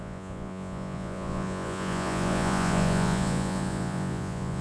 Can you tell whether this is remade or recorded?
remade